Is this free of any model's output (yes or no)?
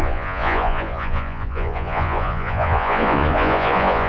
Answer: no